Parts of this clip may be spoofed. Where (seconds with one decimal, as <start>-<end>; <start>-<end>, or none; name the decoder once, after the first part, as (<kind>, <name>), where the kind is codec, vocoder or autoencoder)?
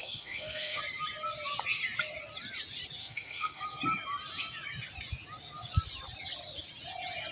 0.0-0.8 (codec, SNAC); 3.0-3.6